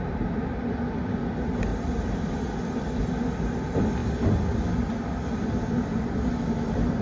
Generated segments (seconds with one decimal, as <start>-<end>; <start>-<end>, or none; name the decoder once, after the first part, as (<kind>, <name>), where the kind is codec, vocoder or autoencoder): 1.7-2.3 (vocoder, BigVGAN v2)